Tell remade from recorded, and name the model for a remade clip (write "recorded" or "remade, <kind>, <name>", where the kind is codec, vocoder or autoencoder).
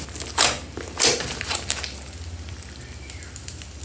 recorded